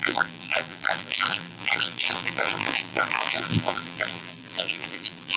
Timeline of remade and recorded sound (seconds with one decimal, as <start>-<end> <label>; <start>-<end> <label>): 0.0-5.4 remade